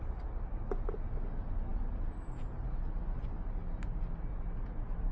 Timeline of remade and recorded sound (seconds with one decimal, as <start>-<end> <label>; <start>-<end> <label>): 0.0-5.1 recorded